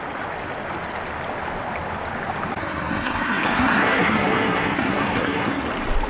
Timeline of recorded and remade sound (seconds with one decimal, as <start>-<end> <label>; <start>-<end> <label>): 0.0-2.6 recorded; 2.6-5.6 remade; 5.6-6.1 recorded